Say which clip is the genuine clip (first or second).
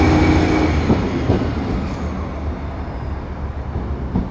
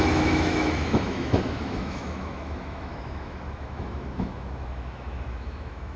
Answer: first